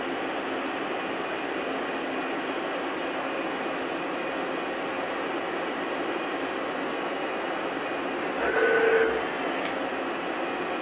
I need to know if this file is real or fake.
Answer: real